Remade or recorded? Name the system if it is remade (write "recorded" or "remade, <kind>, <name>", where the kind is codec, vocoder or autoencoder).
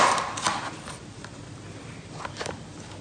recorded